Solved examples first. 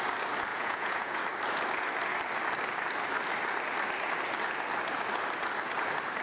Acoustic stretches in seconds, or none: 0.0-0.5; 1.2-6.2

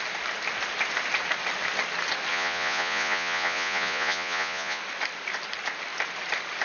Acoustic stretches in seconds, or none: 0.0-2.3; 4.8-6.6

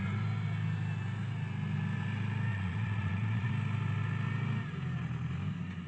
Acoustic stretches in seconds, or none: 0.0-2.5; 3.5-5.9

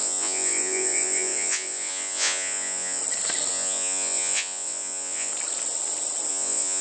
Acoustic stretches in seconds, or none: 3.0-3.5; 5.3-6.3